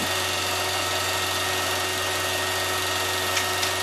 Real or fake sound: real